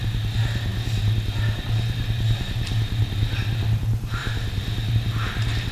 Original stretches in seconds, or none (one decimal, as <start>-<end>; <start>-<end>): 0.0-4.2; 4.9-5.7